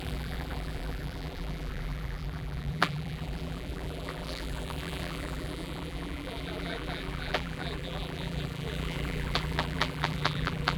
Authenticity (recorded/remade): remade